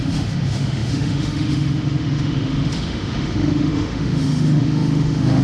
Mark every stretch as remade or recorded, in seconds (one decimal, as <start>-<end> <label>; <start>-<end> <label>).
0.0-5.4 remade